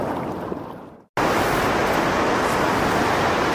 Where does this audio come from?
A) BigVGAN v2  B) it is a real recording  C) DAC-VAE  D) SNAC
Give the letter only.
B